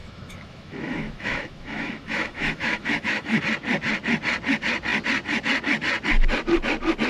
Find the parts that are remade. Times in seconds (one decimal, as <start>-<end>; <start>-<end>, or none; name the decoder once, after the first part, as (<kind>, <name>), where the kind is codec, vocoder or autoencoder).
0.0-3.4 (autoencoder, DAC-VAE)